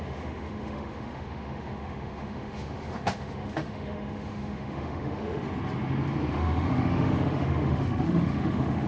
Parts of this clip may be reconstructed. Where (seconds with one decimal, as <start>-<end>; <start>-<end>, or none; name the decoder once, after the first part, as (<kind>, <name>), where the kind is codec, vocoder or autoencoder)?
0.0-5.5 (autoencoder, DAC-VAE); 6.3-8.9